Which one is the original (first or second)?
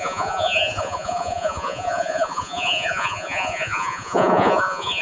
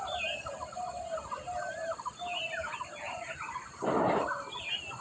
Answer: second